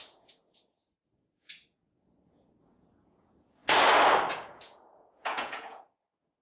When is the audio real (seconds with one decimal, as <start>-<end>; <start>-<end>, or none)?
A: 3.6-4.3